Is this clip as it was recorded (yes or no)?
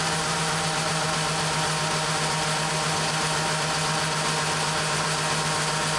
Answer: yes